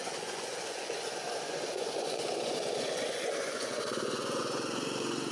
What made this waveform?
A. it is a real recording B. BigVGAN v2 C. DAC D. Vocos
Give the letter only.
D